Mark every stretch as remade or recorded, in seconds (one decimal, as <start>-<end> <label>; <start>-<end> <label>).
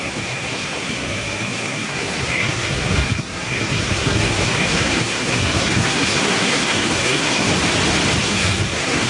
0.0-7.5 remade; 7.5-8.2 recorded; 8.2-9.1 remade